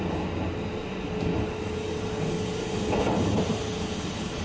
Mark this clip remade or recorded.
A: recorded